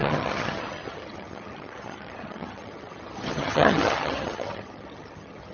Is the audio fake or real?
fake